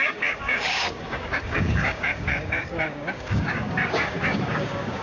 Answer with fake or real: fake